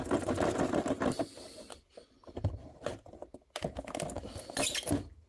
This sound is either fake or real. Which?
real